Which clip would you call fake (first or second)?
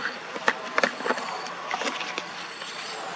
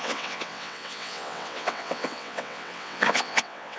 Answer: second